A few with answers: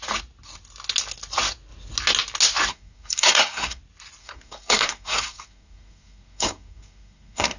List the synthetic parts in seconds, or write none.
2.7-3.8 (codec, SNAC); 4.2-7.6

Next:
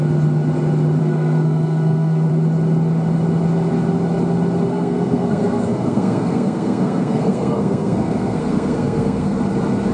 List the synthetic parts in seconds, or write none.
1.0-2.3 (codec, SNAC); 4.7-9.4

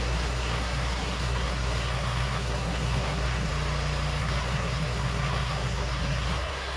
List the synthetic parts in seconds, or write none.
0.0-3.5 (codec, SNAC); 4.2-6.8

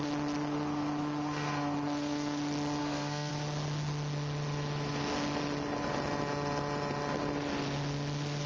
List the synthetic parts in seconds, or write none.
2.8-3.3 (codec, SNAC)

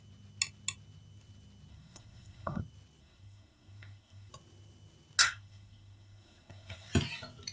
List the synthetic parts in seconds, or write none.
1.7-2.6 (codec, SNAC); 3.0-4.3; 5.2-6.9

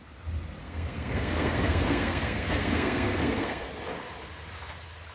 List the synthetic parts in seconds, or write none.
0.6-3.7 (codec, SNAC)

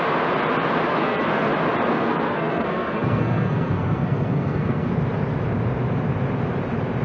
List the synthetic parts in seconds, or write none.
0.9-1.5 (codec, SNAC); 1.9-4.9

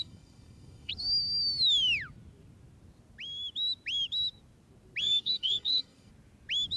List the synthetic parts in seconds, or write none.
0.0-0.9 (codec, SNAC); 5.0-6.1